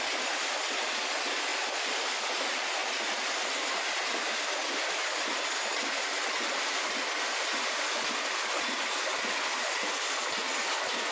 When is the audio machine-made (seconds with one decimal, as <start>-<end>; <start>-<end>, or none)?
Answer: 1.5-2.1